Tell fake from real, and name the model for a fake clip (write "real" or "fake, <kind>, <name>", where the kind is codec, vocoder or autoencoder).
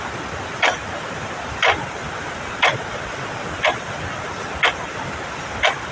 real